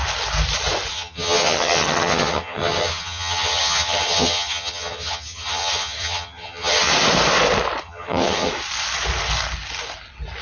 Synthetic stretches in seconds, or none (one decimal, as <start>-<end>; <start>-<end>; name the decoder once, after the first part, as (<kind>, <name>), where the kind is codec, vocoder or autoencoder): 0.9-6.9 (vocoder, HiFi-GAN); 7.8-8.5